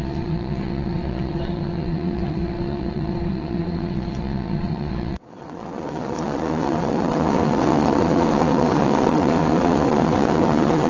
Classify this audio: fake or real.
fake